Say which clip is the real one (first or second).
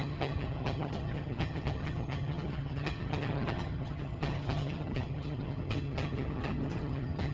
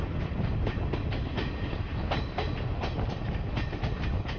second